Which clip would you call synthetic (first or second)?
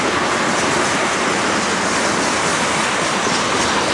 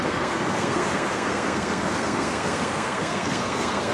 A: second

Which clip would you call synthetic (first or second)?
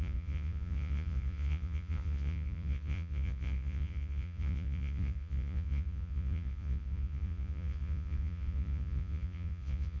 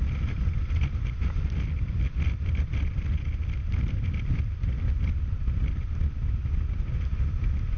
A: first